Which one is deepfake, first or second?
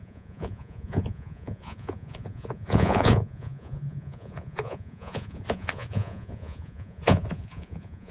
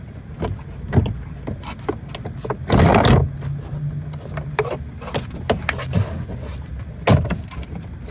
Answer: first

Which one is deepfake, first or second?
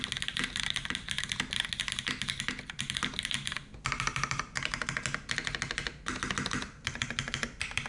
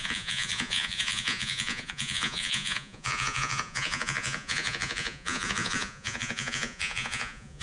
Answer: second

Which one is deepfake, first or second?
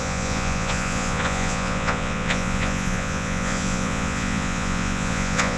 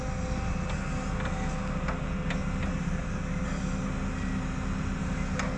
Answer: first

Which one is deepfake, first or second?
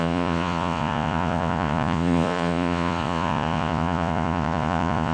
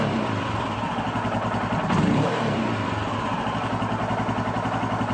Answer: first